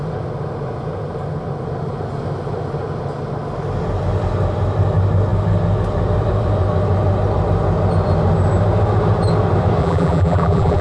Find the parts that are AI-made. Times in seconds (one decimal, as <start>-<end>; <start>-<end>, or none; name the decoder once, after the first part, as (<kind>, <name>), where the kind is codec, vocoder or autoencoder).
9.8-10.8 (vocoder, BigVGAN v2)